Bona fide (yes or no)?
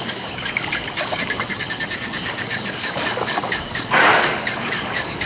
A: no